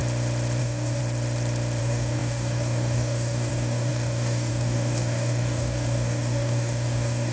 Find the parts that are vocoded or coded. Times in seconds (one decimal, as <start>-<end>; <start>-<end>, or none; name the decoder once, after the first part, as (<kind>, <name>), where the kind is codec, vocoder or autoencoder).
0.6-1.0 (codec, DAC); 1.8-7.3